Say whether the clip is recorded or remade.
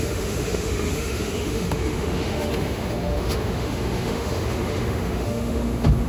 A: remade